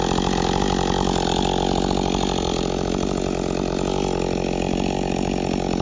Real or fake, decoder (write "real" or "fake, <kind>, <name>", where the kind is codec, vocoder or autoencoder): real